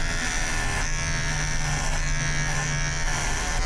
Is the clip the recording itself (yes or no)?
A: yes